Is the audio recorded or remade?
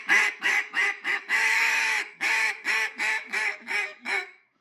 remade